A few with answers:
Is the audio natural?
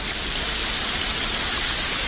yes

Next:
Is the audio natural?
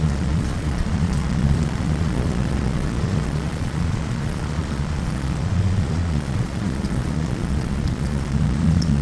no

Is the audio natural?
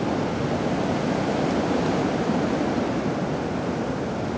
yes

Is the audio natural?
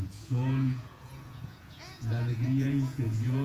no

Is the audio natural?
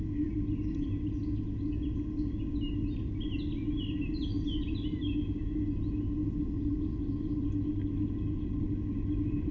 yes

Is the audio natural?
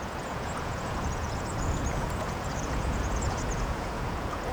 no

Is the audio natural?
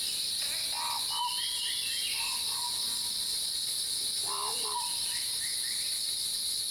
yes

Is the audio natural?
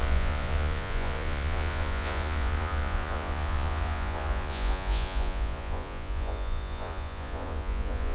no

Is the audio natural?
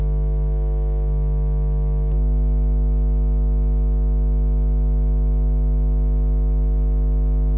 yes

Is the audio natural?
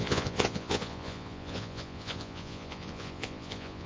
no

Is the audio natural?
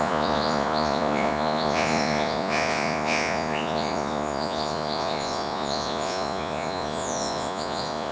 no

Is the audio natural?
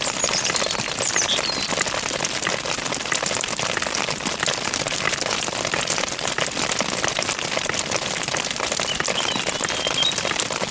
yes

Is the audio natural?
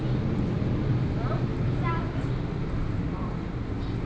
yes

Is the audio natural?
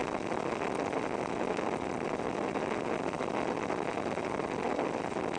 yes